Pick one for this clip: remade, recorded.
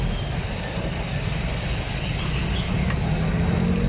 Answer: recorded